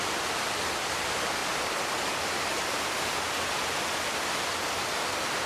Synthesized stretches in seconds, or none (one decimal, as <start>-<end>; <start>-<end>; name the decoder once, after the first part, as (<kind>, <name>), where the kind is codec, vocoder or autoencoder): none